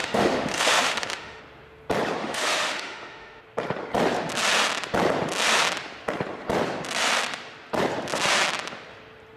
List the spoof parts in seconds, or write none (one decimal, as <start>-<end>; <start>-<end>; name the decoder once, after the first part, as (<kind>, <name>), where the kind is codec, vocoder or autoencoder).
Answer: 0.0-1.4 (autoencoder, DAC-VAE); 2.2-3.4

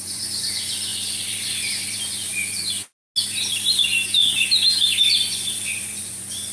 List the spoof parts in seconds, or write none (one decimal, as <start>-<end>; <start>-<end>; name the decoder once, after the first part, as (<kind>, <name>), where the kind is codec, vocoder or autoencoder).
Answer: 0.0-2.4 (vocoder, Vocos); 5.1-6.5

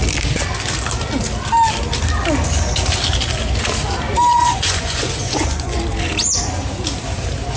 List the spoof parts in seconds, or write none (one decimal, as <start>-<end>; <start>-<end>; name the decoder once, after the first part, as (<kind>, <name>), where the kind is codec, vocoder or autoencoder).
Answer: 4.3-5.8 (vocoder, Vocos)